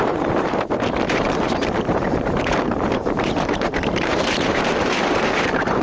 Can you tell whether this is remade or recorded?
remade